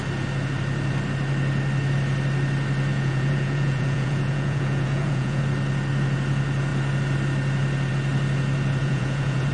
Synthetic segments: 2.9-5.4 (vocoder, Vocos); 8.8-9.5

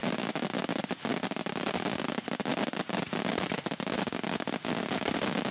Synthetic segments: none

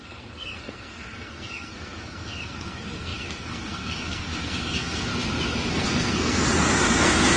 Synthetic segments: 0.0-5.1 (codec, SNAC); 5.7-7.4

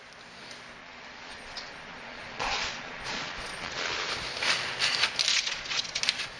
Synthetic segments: 0.8-4.1 (vocoder, Vocos); 5.3-6.0

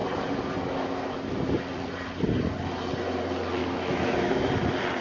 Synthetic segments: 3.6-4.5 (autoencoder, DAC-VAE)

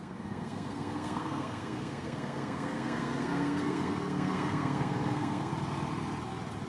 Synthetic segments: 0.0-5.5 (codec, SNAC)

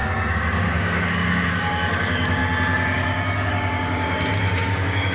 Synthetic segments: 0.0-2.4 (codec, DAC); 3.5-5.1

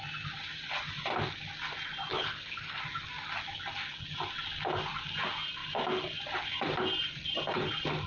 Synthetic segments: 2.1-2.8 (codec, HILCodec)